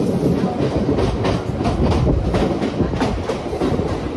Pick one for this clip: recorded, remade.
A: recorded